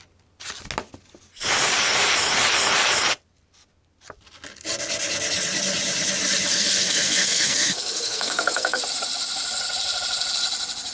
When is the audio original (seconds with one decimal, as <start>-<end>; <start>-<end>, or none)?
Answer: 0.0-6.5; 8.8-10.9